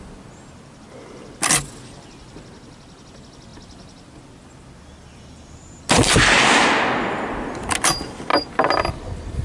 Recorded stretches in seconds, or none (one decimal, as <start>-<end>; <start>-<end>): 0.0-9.4